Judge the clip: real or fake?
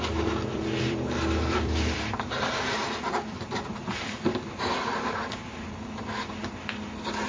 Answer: fake